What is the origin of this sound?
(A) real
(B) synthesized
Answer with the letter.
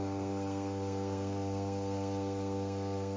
B